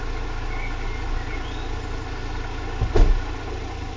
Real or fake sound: real